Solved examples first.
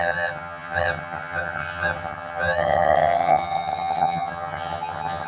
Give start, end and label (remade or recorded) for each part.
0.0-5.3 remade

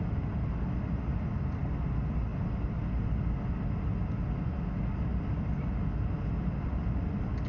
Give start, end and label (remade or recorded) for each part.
0.0-7.5 recorded

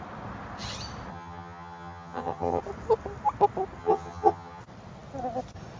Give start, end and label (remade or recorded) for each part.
0.0-1.1 recorded; 1.1-2.6 remade; 2.6-3.8 recorded; 3.8-4.6 remade; 4.6-5.8 recorded

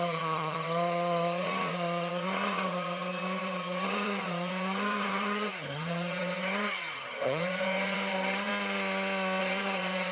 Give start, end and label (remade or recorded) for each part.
0.0-8.5 remade; 8.5-9.4 recorded; 9.4-10.1 remade

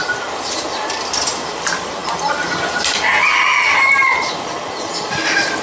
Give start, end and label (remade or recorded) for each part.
0.0-5.6 recorded

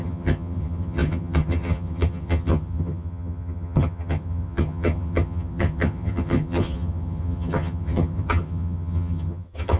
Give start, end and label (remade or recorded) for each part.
0.0-9.8 remade